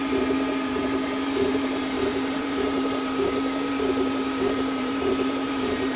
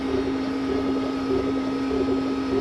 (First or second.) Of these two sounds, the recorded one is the second